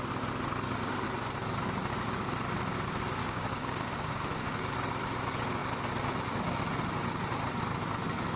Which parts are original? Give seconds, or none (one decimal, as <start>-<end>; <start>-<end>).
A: 0.0-3.2; 4.6-8.4